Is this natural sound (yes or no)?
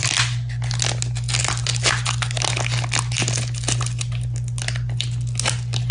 yes